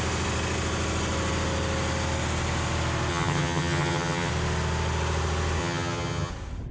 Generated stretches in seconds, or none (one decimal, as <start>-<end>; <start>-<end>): 3.1-4.3; 5.6-6.3